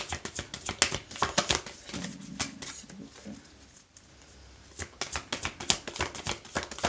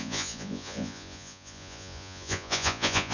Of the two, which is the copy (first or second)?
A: second